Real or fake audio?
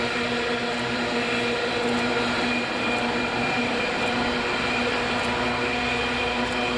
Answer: real